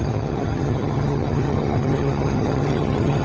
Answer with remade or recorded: remade